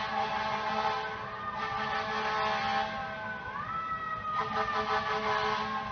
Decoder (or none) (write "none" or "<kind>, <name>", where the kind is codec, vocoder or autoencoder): none